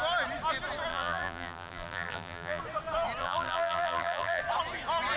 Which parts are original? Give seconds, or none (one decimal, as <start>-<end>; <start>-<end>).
0.0-0.9; 2.6-3.2; 4.4-5.2